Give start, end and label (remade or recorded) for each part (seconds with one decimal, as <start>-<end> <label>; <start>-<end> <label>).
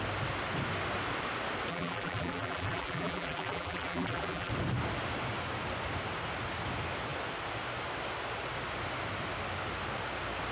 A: 0.0-1.7 recorded; 1.7-4.5 remade; 4.5-10.5 recorded